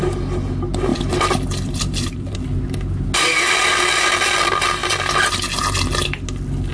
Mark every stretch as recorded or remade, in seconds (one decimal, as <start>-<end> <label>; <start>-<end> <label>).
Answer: 0.0-0.9 recorded; 0.9-2.6 remade; 2.6-6.7 recorded